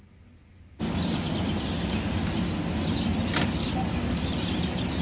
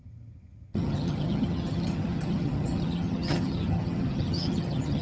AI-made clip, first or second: second